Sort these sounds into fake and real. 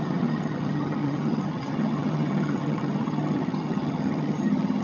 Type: fake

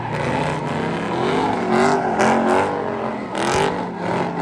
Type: real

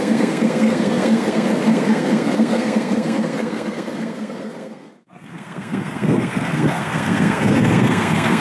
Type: fake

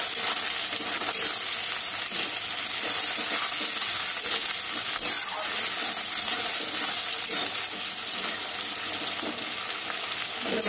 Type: real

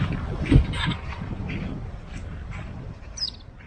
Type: fake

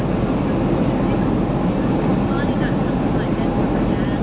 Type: real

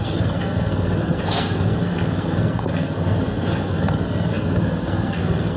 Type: fake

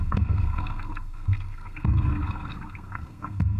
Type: fake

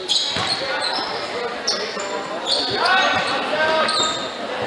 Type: real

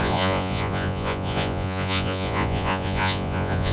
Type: fake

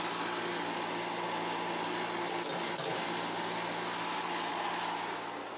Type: real